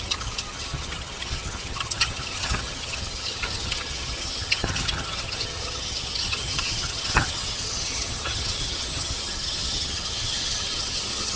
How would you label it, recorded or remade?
remade